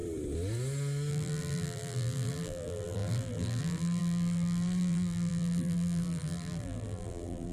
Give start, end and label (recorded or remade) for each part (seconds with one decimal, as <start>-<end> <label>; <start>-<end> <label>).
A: 0.0-1.1 recorded; 1.1-7.5 remade